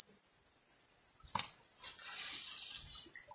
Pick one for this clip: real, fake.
real